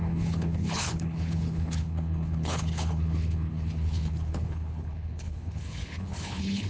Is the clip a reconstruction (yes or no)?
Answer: yes